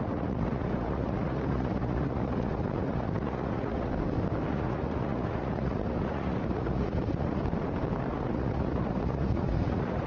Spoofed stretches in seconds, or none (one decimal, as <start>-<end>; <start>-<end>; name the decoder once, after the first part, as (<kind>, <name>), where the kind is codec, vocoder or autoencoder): 0.0-3.9 (vocoder, Vocos); 4.5-7.4; 8.1-10.1